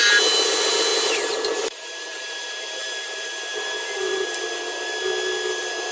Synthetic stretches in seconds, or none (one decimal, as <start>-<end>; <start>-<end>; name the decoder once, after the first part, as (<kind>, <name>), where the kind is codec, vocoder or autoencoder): 0.9-4.4 (vocoder, BigVGAN v2)